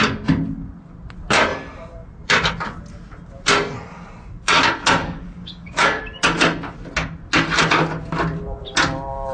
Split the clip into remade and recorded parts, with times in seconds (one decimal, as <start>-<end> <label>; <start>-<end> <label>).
0.0-5.0 recorded; 5.0-6.0 remade; 6.0-9.3 recorded